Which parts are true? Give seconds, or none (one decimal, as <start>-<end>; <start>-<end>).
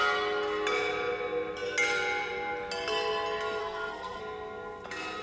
0.0-3.6; 4.2-5.2